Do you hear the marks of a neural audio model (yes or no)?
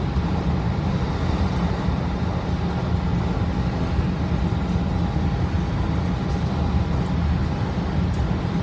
no